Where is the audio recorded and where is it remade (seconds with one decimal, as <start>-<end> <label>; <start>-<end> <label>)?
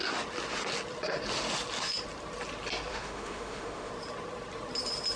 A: 0.0-2.9 recorded; 2.9-3.9 remade; 3.9-5.2 recorded